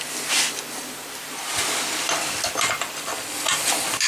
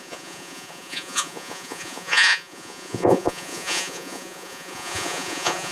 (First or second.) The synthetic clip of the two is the second